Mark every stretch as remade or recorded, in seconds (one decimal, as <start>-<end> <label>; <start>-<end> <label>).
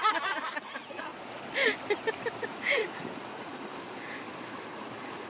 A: 0.0-1.1 remade; 1.1-2.4 recorded; 2.4-3.7 remade; 3.7-4.7 recorded; 4.7-5.3 remade